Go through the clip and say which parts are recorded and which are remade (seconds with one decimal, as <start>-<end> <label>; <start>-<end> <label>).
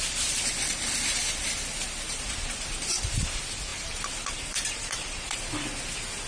0.0-3.7 recorded; 3.7-5.5 remade; 5.5-6.3 recorded